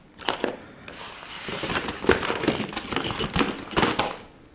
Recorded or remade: recorded